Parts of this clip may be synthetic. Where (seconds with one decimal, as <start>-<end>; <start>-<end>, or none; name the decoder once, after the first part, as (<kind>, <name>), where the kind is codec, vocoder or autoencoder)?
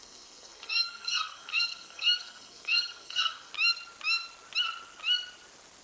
0.0-3.5 (codec, SNAC)